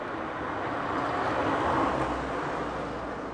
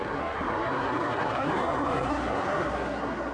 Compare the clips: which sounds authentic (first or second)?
first